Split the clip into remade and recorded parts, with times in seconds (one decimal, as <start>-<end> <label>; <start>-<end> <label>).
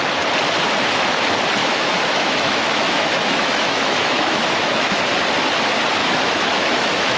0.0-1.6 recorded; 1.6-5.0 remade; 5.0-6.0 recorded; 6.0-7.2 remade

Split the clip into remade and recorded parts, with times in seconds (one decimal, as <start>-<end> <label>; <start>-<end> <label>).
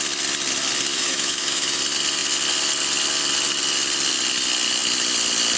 0.0-0.9 recorded; 0.9-1.8 remade; 1.8-5.6 recorded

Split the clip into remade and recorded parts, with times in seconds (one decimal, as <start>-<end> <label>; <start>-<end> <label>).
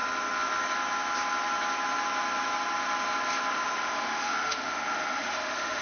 0.0-3.5 recorded; 3.5-5.8 remade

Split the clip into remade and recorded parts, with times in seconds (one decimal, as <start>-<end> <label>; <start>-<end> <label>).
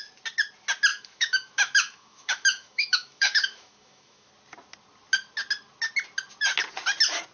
0.0-0.9 recorded; 0.9-4.3 remade; 4.3-7.3 recorded